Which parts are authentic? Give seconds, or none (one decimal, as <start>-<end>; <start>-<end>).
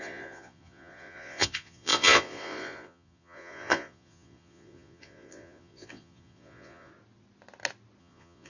6.9-8.0